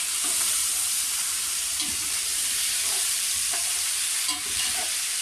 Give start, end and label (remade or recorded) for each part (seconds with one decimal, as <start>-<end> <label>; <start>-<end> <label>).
0.0-5.2 remade